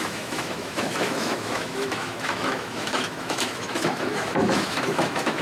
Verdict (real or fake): fake